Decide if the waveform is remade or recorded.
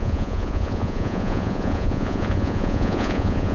remade